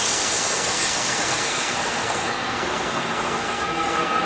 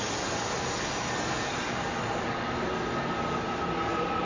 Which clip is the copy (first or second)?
first